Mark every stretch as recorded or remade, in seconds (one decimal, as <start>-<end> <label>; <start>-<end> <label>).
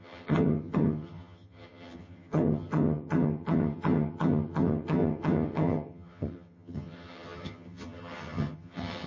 0.0-9.1 remade